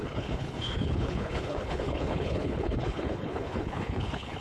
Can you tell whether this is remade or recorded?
remade